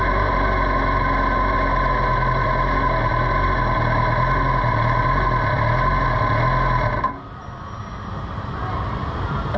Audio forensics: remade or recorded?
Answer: recorded